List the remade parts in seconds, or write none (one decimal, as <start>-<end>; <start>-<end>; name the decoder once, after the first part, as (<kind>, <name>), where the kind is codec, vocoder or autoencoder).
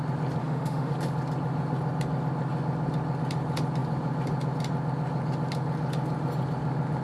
0.4-0.9 (autoencoder, DAC-VAE)